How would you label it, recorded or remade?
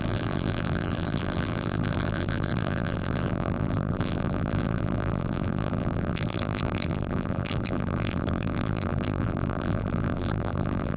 remade